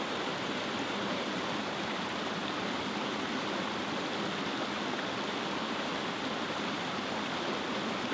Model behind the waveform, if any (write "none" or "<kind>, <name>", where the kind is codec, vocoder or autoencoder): none